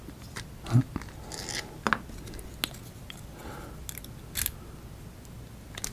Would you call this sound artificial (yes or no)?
no